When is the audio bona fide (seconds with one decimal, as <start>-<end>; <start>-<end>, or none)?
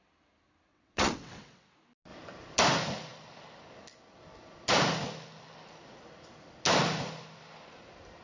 0.0-0.7; 1.7-8.2